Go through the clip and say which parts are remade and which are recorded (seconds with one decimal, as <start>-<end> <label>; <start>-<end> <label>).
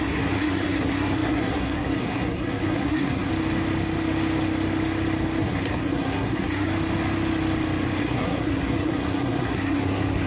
0.0-3.3 remade; 3.3-5.4 recorded; 5.4-6.7 remade; 6.7-8.0 recorded; 8.0-10.3 remade